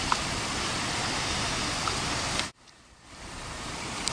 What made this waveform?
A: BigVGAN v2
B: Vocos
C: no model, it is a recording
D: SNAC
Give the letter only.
A